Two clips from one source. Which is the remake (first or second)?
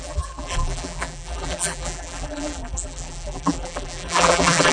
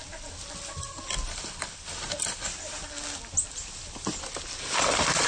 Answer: first